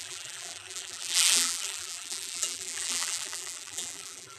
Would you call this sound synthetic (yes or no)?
yes